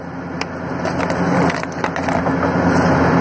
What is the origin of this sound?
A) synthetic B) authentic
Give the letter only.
B